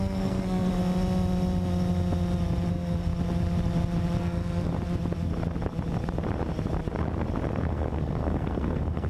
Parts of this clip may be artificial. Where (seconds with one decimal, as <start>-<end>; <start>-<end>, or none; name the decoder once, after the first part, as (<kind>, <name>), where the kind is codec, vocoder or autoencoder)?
0.0-0.7 (codec, SNAC); 2.7-3.1; 4.2-4.7; 7.5-9.1